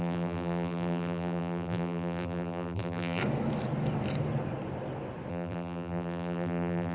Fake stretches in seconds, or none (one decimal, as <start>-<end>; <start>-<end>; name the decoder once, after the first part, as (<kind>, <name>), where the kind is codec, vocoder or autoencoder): 0.0-3.2 (vocoder, BigVGAN v2); 5.3-6.9